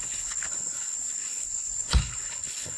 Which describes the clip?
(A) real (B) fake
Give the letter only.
B